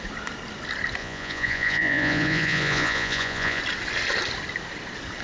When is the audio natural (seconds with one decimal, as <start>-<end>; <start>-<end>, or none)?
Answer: 0.0-1.0; 3.6-5.2